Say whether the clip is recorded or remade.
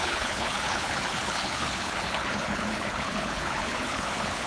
remade